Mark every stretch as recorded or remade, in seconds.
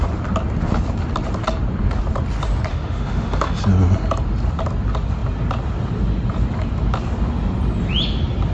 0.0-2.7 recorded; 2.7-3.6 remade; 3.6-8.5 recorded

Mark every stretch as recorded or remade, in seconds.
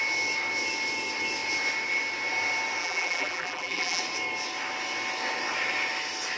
0.0-2.8 recorded; 2.8-4.0 remade; 4.0-6.4 recorded